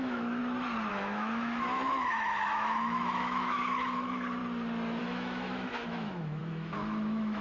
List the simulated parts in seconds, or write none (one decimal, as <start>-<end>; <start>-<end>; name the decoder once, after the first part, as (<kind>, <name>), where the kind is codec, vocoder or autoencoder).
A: 0.0-0.4 (autoencoder, DAC-VAE); 0.9-4.4; 5.0-7.4